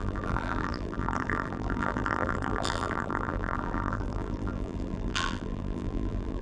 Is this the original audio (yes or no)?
no